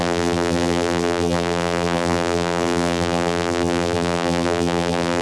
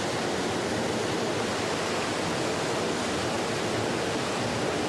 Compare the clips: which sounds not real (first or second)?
first